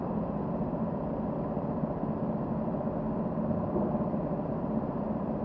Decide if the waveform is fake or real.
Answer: real